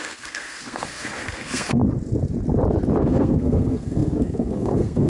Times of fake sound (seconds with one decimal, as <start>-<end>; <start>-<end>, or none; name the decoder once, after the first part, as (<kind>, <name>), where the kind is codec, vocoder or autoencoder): 0.0-1.8 (codec, SNAC); 3.0-5.1